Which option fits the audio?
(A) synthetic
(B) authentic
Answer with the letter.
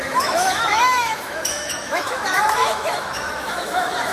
A